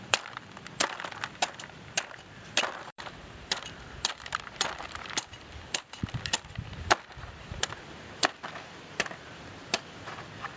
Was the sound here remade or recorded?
remade